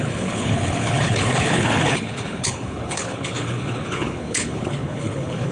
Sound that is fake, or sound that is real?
fake